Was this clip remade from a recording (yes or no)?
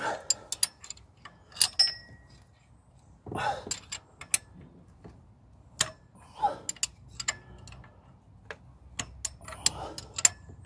no